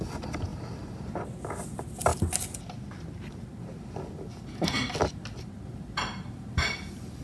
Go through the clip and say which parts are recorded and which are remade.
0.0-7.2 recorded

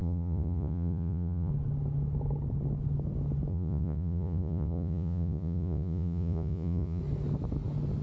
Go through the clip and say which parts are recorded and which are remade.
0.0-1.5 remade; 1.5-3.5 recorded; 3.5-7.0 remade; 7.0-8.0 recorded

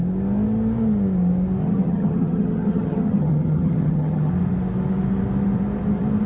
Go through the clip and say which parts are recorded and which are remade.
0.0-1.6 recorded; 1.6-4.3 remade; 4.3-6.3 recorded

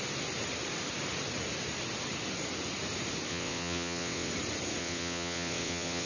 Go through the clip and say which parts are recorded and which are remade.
0.0-3.3 recorded; 3.3-4.3 remade; 4.3-4.8 recorded; 4.8-6.1 remade

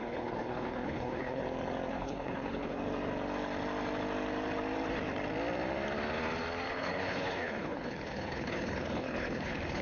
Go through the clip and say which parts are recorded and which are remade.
0.0-1.4 remade; 1.4-1.9 recorded; 1.9-2.8 remade; 2.8-6.7 recorded; 6.7-9.8 remade